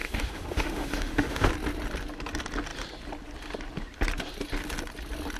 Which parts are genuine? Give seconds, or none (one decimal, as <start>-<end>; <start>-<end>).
1.5-5.4